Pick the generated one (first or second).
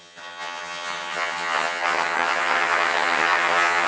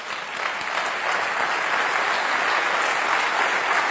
first